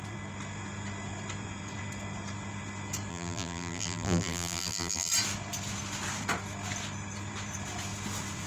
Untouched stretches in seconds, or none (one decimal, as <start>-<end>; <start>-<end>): 0.0-3.1; 5.1-8.5